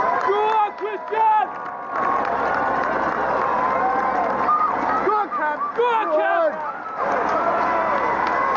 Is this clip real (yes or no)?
yes